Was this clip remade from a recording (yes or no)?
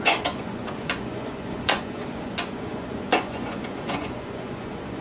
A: yes